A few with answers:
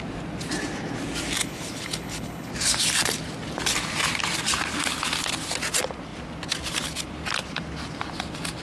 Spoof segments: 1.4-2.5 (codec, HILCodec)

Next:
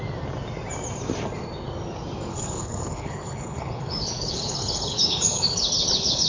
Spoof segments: 2.3-6.3 (codec, HILCodec)

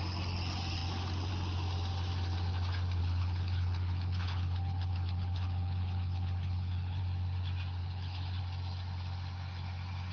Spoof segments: 3.0-7.0 (codec, HILCodec); 7.8-8.4

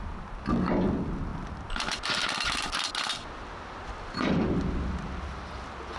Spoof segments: none

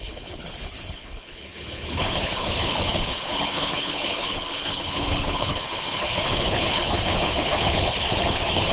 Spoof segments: 0.0-8.7 (codec, HILCodec)

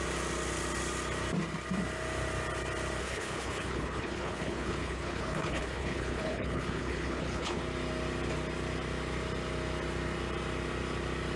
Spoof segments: 3.0-7.6 (codec, HILCodec)

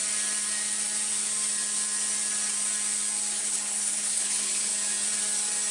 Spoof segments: 3.4-4.7 (codec, HILCodec)

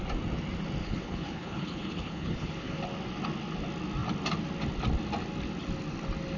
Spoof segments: 0.8-2.8 (codec, HILCodec)